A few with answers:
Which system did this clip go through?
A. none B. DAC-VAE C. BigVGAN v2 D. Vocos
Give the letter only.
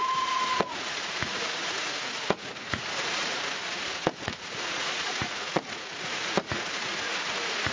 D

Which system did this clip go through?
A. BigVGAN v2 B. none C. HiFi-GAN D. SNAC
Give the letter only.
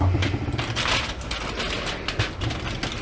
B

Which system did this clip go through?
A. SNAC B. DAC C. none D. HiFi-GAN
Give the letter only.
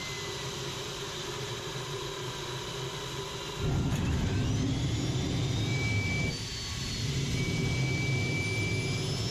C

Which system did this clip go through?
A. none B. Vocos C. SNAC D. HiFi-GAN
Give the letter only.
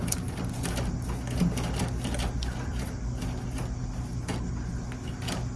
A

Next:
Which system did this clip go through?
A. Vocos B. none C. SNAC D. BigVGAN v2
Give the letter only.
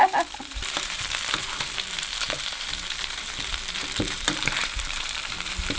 D